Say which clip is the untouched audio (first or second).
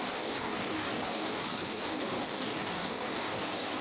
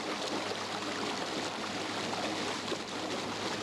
second